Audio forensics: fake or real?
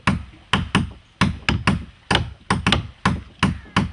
real